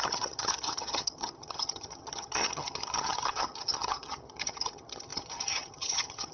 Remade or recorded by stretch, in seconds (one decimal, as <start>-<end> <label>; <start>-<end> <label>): 0.0-6.3 remade